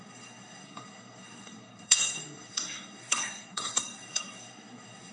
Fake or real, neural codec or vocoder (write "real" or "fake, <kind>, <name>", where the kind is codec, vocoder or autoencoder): fake, codec, SNAC